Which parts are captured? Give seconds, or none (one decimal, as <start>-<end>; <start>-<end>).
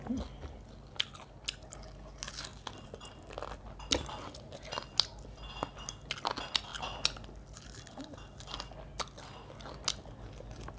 0.0-10.8